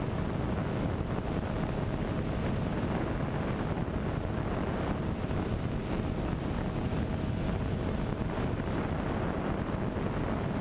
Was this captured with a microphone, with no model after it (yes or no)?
yes